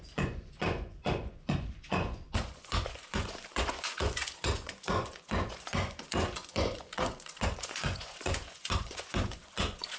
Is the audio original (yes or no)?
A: no